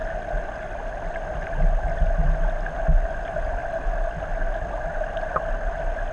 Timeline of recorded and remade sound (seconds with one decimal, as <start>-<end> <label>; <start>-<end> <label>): 0.0-6.1 recorded